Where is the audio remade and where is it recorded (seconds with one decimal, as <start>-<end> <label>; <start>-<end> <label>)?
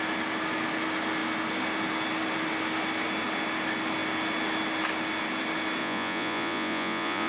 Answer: 0.0-5.8 recorded; 5.8-7.3 remade